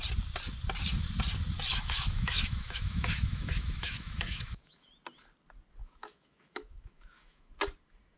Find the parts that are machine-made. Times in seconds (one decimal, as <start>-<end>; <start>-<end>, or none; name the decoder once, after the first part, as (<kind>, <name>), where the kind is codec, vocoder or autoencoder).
1.7-4.9 (autoencoder, DAC-VAE); 5.8-7.5